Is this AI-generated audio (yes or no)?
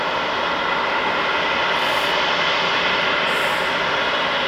no